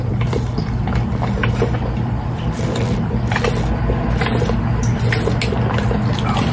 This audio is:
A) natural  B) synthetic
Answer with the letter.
A